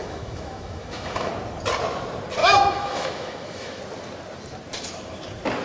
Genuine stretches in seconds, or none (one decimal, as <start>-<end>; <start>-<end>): 1.3-2.4; 3.8-5.6

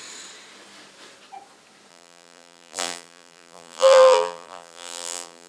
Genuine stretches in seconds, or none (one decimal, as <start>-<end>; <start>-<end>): 0.0-1.9

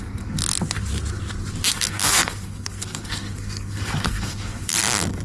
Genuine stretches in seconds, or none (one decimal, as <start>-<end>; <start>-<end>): 0.4-1.7